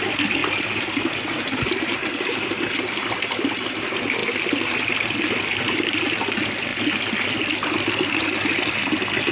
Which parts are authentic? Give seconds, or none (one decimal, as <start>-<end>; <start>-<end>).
0.0-9.3